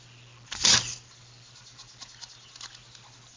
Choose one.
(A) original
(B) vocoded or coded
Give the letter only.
A